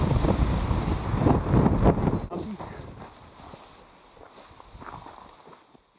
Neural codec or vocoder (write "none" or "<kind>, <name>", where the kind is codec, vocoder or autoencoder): none